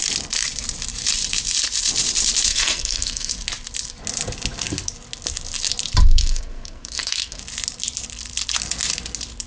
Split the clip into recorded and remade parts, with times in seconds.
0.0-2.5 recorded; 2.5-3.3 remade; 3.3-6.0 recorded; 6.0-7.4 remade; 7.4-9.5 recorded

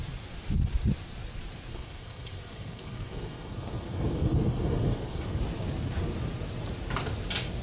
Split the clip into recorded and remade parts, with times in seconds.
0.0-1.7 recorded; 1.7-5.4 remade; 5.4-7.6 recorded

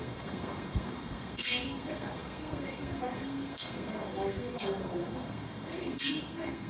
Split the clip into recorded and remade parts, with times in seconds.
0.0-6.7 remade

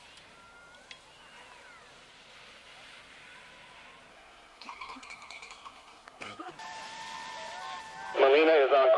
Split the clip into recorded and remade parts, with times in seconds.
0.0-4.1 recorded; 4.1-6.5 remade; 6.5-9.0 recorded

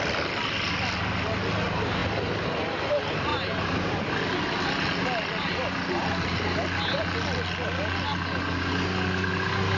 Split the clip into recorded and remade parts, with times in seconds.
0.0-9.8 recorded

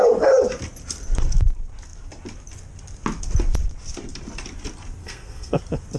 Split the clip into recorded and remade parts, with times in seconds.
0.0-5.0 recorded; 5.0-5.6 remade; 5.6-6.0 recorded

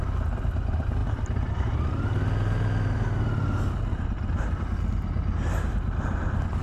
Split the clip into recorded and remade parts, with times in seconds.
0.0-6.6 recorded

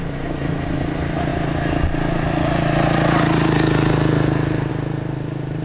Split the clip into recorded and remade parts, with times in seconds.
0.0-5.6 recorded